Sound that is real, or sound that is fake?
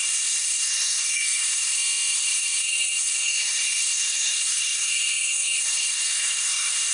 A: fake